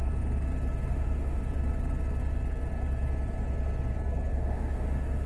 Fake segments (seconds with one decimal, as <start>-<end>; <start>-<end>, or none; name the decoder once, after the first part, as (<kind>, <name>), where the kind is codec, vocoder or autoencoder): 0.9-1.4 (autoencoder, DAC-VAE); 4.3-5.3